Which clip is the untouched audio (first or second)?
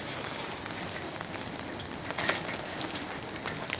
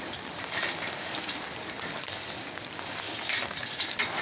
first